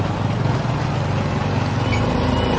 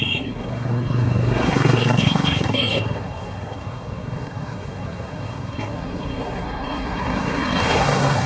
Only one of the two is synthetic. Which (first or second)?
second